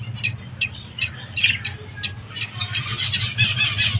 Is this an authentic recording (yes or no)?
yes